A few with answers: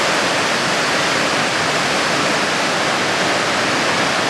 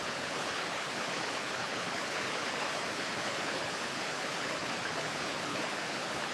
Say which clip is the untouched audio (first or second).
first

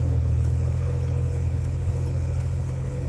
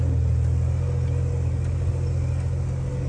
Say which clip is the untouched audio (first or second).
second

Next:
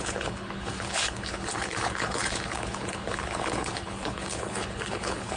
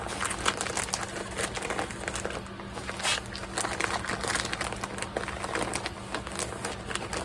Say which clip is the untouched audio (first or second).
second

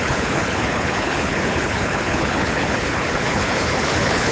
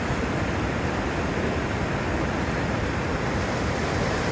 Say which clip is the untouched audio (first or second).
second